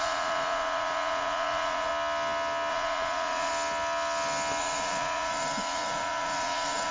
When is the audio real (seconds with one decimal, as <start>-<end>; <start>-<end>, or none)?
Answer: 1.9-2.7; 3.5-4.6